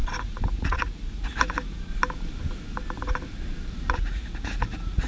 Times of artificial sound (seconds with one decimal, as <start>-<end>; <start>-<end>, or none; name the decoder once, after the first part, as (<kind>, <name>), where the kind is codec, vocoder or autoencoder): 0.0-1.9 (vocoder, Vocos); 3.9-5.1

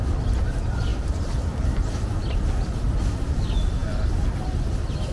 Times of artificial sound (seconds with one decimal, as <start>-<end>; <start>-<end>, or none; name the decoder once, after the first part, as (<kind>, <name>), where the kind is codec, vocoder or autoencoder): none